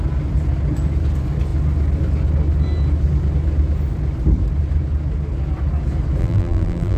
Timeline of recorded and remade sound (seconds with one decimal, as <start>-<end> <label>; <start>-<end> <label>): 0.0-6.2 recorded; 6.2-7.0 remade